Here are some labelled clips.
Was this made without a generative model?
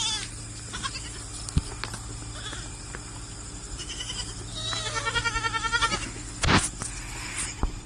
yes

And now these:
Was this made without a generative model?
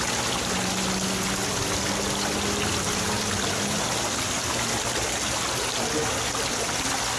yes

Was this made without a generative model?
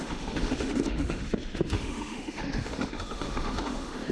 no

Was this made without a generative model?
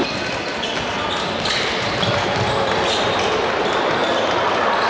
yes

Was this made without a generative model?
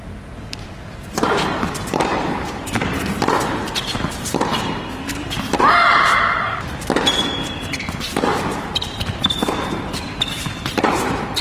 no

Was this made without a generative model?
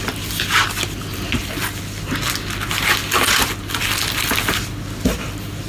yes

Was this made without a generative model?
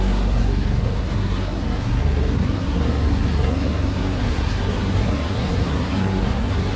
no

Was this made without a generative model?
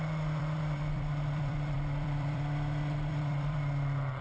no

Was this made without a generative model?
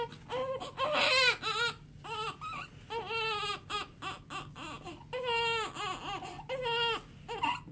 yes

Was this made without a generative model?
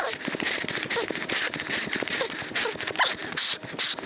yes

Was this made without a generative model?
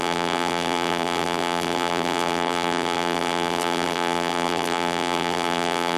no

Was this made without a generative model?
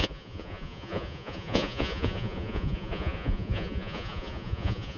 no